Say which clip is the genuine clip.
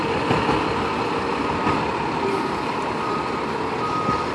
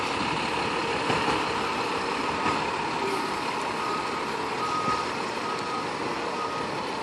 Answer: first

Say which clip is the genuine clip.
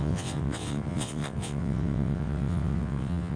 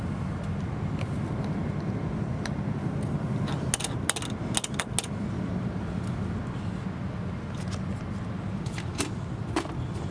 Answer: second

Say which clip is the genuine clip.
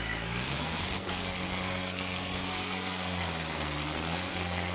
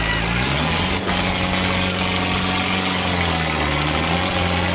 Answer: second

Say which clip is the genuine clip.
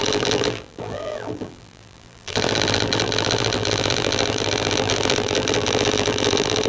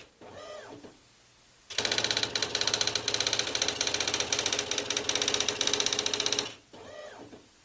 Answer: second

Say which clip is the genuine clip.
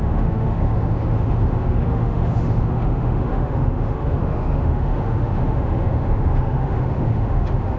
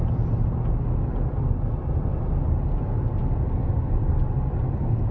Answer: second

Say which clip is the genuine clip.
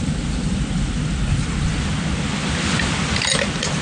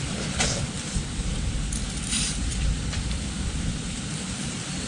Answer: first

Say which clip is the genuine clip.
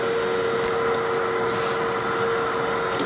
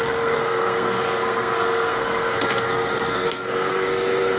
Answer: first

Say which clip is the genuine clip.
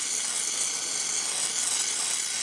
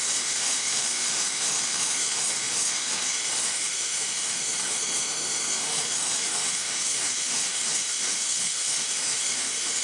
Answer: first